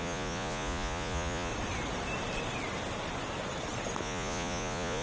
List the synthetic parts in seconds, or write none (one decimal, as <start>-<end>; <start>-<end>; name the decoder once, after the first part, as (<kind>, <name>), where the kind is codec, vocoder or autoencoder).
0.0-1.5 (vocoder, Vocos); 4.0-5.0